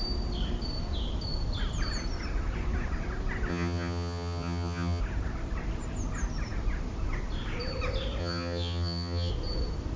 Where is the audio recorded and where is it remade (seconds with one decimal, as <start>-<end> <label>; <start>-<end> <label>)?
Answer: 0.0-3.5 recorded; 3.5-5.0 remade; 5.0-8.2 recorded; 8.2-9.3 remade; 9.3-10.0 recorded